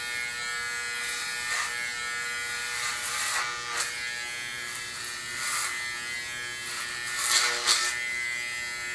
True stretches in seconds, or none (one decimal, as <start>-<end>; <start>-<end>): 0.0-8.9